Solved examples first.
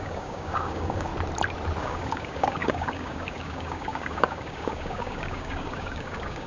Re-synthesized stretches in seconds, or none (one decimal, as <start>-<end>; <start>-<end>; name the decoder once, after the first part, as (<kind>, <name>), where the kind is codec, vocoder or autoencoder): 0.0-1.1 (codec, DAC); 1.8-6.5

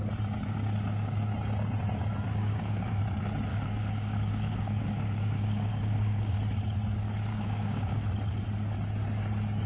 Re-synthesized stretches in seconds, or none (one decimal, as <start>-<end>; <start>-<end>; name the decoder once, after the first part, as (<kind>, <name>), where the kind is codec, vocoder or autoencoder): 2.3-3.0 (codec, DAC); 3.5-6.4; 7.3-8.1

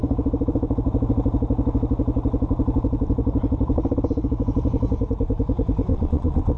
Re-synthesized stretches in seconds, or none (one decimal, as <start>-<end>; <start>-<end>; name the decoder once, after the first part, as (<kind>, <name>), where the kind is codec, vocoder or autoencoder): 5.9-6.6 (vocoder, Vocos)